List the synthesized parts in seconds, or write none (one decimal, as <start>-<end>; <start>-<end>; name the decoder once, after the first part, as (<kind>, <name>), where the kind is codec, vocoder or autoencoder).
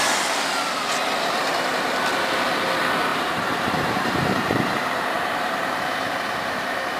3.1-7.0 (vocoder, BigVGAN v2)